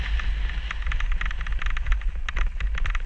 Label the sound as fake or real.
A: real